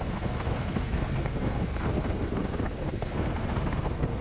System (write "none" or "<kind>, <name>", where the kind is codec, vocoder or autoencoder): codec, SNAC